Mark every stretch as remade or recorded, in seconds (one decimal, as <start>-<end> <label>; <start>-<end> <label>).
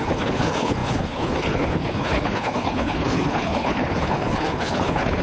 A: 0.0-5.2 remade